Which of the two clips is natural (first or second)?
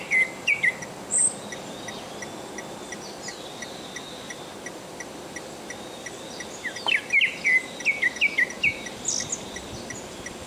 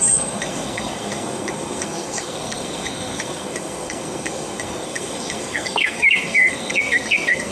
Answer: first